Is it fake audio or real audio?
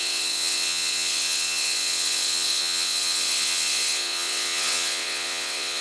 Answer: fake